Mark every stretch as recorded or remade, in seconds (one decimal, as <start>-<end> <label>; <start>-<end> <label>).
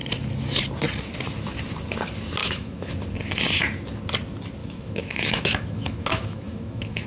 0.0-2.4 recorded; 2.4-2.9 remade; 2.9-4.6 recorded; 4.6-7.1 remade